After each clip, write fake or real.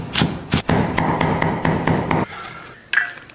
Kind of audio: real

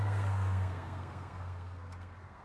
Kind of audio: fake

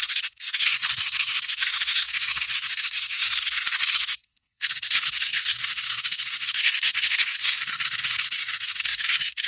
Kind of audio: fake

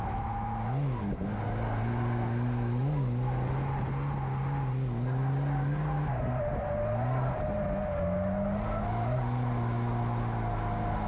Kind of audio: real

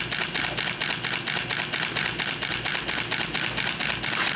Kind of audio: real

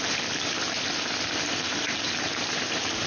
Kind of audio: real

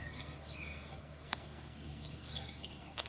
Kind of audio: fake